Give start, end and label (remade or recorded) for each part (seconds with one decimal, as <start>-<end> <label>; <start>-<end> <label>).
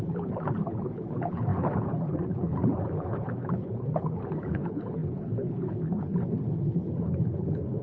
0.0-7.8 remade